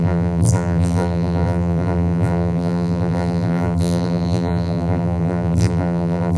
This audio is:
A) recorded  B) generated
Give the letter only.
B